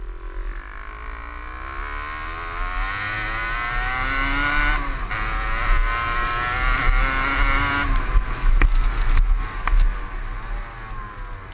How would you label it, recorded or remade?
recorded